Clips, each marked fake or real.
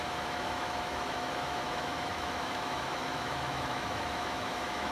fake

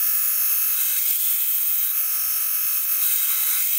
real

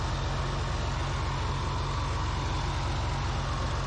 real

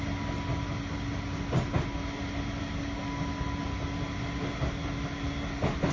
real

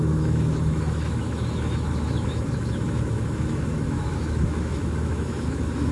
fake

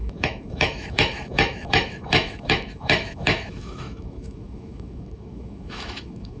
fake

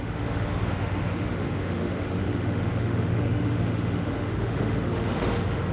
fake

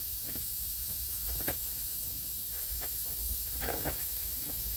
fake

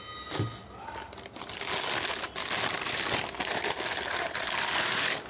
real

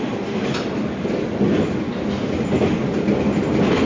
real